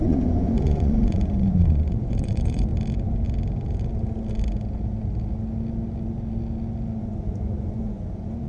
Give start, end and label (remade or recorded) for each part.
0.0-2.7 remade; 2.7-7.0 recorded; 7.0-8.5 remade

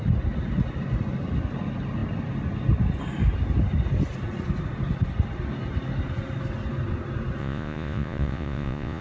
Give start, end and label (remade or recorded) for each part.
0.0-7.4 recorded; 7.4-9.0 remade

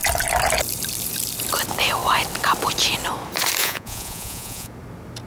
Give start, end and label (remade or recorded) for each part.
0.0-3.6 recorded; 3.6-4.7 remade; 4.7-5.3 recorded